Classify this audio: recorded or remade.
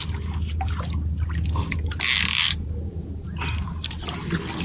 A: recorded